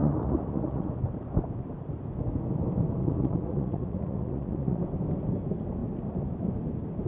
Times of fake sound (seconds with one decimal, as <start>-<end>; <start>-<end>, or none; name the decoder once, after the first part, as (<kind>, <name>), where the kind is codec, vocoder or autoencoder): 0.0-0.9 (vocoder, Vocos); 3.0-4.8